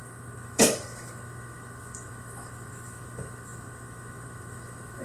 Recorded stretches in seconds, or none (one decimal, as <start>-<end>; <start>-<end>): none